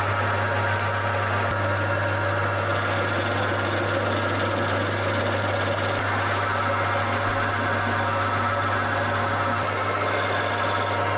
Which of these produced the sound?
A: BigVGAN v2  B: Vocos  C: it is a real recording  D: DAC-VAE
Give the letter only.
C